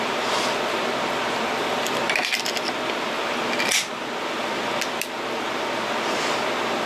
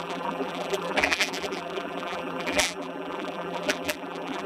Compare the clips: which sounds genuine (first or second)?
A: first